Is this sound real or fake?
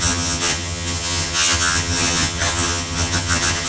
fake